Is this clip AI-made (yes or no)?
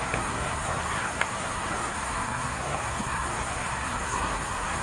yes